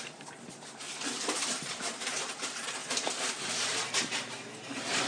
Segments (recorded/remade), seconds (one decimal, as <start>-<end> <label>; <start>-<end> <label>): 0.0-5.1 remade